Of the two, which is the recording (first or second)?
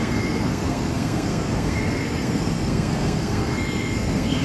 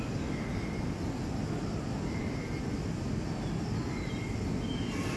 second